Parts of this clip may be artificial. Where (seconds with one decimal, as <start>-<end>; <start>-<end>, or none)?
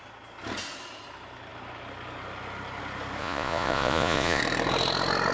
3.2-4.4